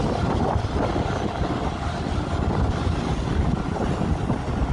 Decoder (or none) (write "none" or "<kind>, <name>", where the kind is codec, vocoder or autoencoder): none